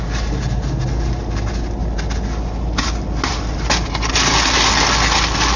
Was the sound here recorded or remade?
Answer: recorded